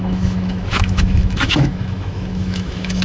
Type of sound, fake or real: fake